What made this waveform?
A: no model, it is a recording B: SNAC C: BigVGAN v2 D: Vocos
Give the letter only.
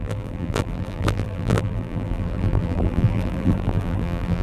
C